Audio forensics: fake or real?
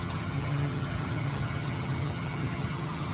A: fake